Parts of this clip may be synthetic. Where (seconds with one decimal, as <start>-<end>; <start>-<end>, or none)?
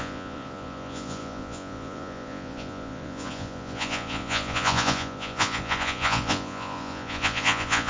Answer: 0.0-7.9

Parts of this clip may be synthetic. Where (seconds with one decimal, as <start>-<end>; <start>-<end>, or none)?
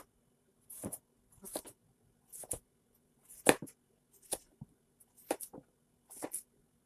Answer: none